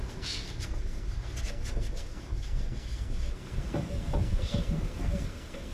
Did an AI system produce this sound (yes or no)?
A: yes